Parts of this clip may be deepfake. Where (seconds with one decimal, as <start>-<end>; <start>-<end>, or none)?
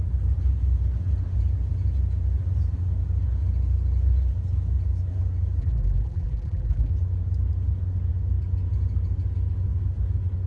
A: 5.6-6.9